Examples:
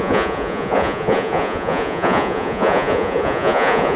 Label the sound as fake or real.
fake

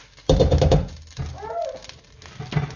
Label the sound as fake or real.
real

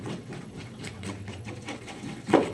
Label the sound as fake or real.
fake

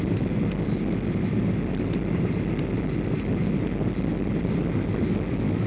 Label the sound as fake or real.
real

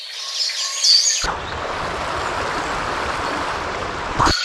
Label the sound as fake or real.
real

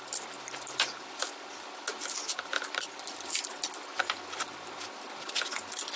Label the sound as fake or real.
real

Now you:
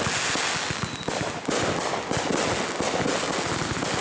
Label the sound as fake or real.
real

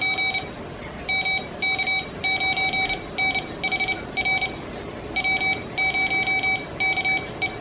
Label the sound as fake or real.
real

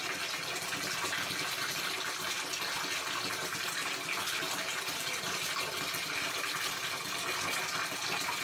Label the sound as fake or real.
real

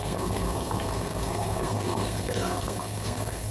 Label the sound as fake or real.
fake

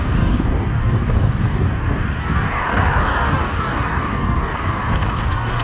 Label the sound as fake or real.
fake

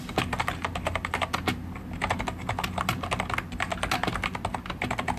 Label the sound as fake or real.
real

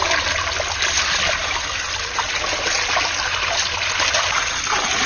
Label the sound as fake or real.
real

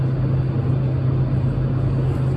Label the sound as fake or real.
real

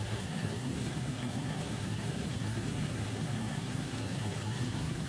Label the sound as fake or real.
fake